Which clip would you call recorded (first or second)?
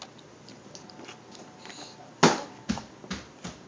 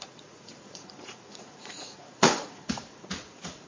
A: first